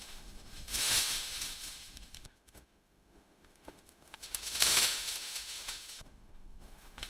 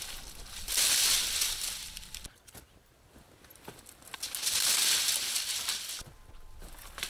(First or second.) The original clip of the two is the second